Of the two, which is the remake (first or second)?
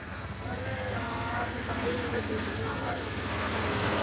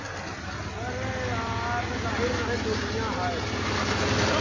first